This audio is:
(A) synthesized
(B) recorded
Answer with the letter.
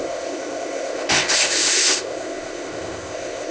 A